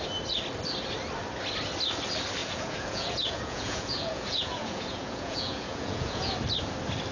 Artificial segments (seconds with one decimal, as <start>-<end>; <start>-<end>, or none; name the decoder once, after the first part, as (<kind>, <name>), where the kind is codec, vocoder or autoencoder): 2.4-6.3 (vocoder, Vocos)